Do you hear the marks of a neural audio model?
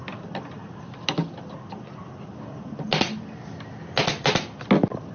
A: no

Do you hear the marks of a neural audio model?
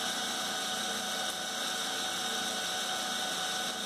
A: no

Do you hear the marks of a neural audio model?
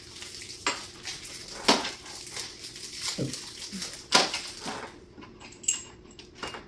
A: no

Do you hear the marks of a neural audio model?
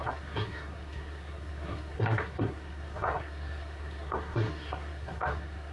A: yes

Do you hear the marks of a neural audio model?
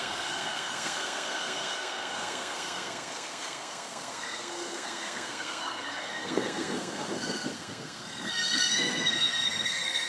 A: yes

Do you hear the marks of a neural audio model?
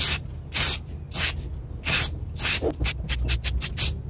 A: no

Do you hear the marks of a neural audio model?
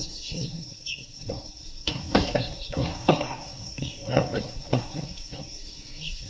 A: yes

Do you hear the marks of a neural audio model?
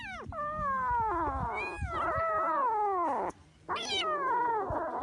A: no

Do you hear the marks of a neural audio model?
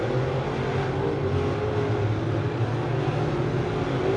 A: no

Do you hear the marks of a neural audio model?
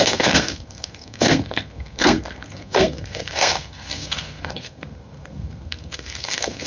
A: yes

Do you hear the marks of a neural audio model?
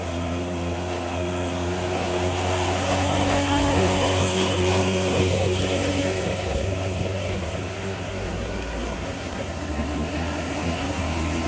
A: yes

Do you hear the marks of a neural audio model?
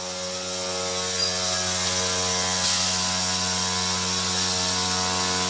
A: no